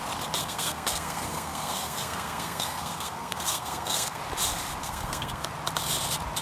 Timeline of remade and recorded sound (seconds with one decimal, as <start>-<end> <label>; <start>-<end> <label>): 0.0-0.4 recorded; 0.4-4.2 remade; 4.2-4.8 recorded; 4.8-5.5 remade; 5.5-6.4 recorded